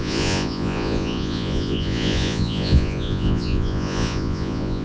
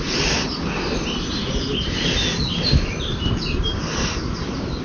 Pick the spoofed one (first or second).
first